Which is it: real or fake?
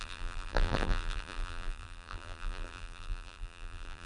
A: fake